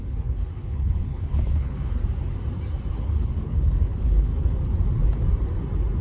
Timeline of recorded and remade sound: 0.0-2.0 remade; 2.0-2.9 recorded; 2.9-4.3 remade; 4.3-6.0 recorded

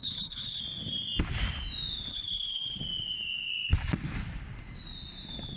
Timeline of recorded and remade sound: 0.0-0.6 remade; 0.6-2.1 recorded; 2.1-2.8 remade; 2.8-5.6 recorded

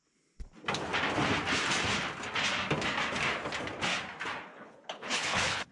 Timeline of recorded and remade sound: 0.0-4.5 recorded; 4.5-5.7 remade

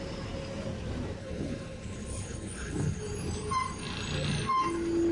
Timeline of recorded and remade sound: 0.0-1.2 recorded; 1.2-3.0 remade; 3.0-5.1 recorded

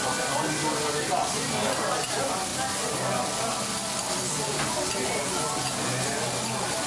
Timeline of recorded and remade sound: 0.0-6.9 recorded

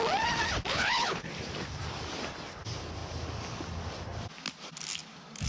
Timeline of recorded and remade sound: 0.0-0.7 recorded; 0.7-1.3 remade; 1.3-5.5 recorded